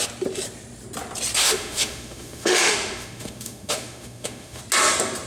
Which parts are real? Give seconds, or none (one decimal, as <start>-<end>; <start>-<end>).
0.0-1.4; 4.6-5.3